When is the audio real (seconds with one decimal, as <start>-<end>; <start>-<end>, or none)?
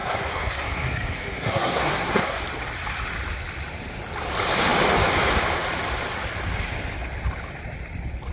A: 2.4-8.3